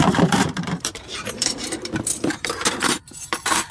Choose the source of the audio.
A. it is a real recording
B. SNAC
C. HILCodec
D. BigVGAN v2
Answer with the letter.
D